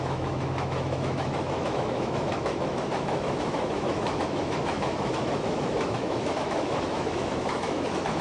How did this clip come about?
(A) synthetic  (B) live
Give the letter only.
A